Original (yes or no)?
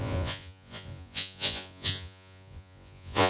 no